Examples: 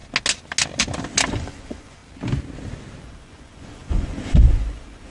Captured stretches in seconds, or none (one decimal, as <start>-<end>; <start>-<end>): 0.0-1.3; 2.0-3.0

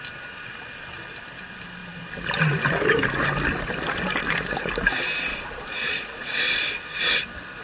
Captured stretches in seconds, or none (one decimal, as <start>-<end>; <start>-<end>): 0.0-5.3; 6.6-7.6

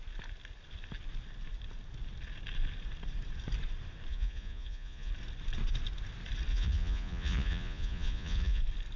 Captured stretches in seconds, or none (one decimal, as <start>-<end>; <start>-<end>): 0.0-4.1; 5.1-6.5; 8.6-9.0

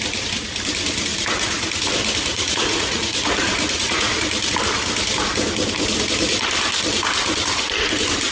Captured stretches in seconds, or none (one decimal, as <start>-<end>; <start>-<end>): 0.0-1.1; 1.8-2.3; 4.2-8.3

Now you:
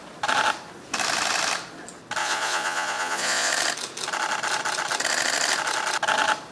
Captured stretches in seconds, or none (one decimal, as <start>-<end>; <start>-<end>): 0.0-2.2; 3.5-6.5

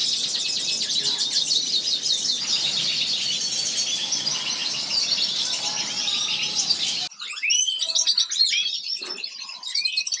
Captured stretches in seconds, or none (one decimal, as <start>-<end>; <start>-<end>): 0.0-10.2